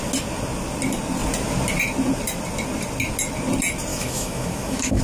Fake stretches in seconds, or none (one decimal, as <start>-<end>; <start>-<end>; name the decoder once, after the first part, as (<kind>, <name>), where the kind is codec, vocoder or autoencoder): 3.9-5.0 (autoencoder, DAC-VAE)

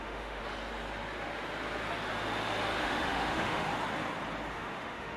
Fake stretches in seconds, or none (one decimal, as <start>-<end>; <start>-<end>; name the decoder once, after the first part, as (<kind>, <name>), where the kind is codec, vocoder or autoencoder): 0.0-0.4 (autoencoder, DAC-VAE); 2.8-3.7; 4.5-5.2

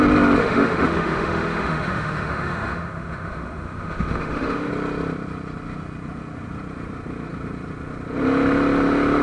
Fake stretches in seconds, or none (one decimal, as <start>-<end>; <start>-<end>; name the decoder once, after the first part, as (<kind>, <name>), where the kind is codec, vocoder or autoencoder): 0.4-4.7 (autoencoder, DAC-VAE)

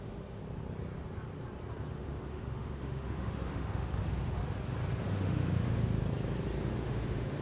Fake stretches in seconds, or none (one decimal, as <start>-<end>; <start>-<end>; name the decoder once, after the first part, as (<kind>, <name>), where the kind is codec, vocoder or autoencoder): 0.0-0.4 (autoencoder, DAC-VAE); 1.9-4.4; 5.0-6.0; 6.6-7.4

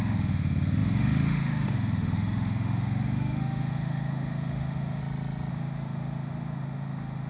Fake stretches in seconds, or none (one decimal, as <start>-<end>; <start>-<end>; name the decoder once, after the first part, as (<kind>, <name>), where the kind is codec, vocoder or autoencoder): 0.0-5.0 (autoencoder, DAC-VAE); 5.5-7.3

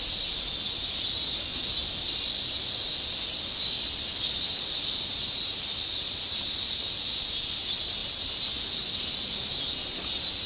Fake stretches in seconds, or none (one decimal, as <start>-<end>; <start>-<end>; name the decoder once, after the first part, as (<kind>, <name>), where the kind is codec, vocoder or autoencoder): none